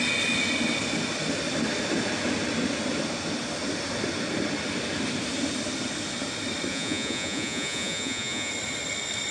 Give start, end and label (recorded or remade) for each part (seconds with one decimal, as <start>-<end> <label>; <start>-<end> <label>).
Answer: 0.0-6.7 recorded; 6.7-8.5 remade; 8.5-9.3 recorded